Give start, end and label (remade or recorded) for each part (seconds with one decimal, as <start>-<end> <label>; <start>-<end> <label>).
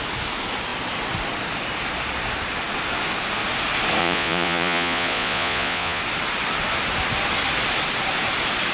0.0-4.0 recorded; 4.0-6.0 remade; 6.0-8.7 recorded